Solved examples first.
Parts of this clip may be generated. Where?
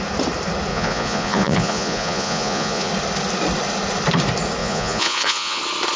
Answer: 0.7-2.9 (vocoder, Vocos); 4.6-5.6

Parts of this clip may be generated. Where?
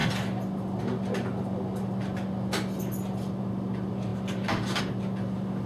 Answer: none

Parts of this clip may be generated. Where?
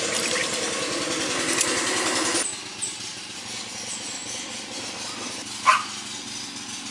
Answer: none